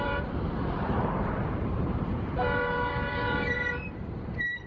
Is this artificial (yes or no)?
yes